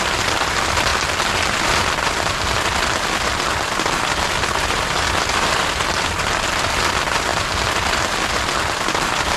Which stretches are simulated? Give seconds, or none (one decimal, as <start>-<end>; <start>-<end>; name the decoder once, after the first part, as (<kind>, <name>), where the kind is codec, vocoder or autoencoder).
none